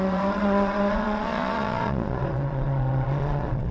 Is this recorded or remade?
remade